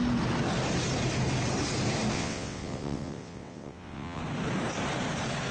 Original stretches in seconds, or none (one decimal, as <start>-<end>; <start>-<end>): 0.0-2.1; 4.2-5.5